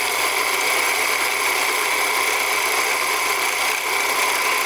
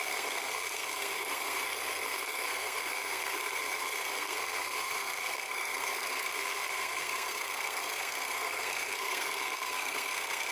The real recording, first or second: first